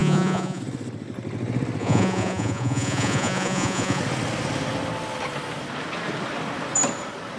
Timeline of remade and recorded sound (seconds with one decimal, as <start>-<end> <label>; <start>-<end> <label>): 0.0-0.6 remade; 0.6-1.8 recorded; 1.8-4.0 remade; 4.0-7.4 recorded